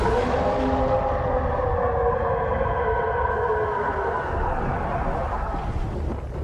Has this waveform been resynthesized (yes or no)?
no